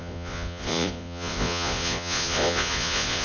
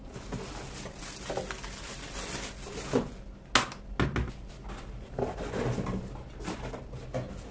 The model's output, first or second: first